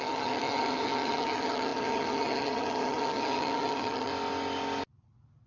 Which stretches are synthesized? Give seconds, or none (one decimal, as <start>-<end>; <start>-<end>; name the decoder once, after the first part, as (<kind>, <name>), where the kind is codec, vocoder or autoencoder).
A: 0.0-4.1 (vocoder, HiFi-GAN)